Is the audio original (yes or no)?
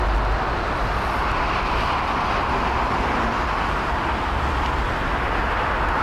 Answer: yes